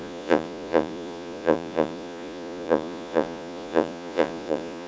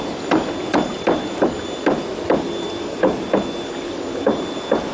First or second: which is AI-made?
first